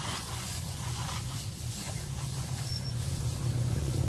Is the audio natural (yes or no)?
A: no